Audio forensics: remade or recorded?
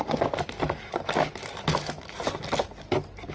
recorded